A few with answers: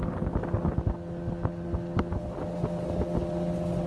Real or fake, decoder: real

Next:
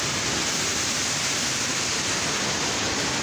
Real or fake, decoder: real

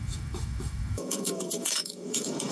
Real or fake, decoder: fake, autoencoder, DAC-VAE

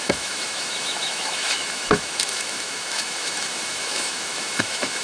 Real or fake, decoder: fake, autoencoder, DAC-VAE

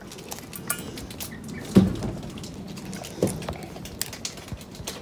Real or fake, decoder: real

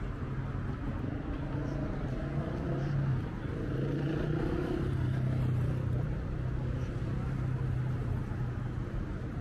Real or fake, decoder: real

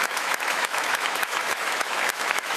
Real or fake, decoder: fake, autoencoder, DAC-VAE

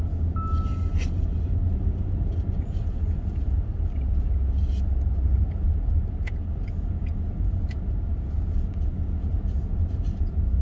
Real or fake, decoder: real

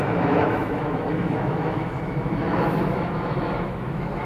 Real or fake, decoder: fake, autoencoder, DAC-VAE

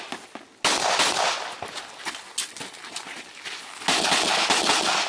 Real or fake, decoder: real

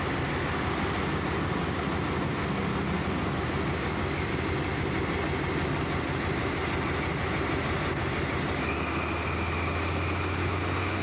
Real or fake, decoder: real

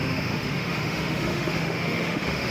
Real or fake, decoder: fake, autoencoder, DAC-VAE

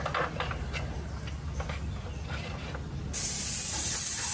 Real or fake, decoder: real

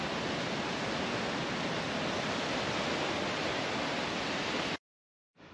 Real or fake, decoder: real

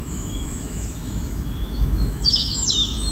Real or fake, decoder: fake, autoencoder, DAC-VAE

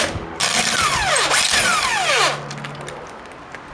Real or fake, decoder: real